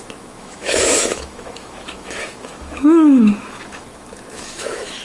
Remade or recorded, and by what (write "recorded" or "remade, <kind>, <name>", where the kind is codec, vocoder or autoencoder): remade, autoencoder, DAC-VAE